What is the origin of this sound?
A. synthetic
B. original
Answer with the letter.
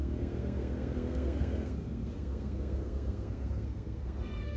A